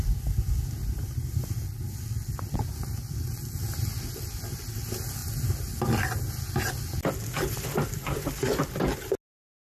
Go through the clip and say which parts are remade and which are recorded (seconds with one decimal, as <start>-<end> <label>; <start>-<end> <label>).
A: 0.0-9.6 recorded